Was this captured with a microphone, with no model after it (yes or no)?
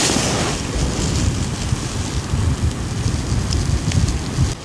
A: yes